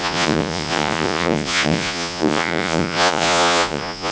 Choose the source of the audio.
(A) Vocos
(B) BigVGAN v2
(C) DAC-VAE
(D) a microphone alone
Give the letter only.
A